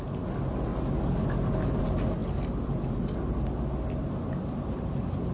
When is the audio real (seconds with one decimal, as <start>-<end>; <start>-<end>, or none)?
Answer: 0.0-5.3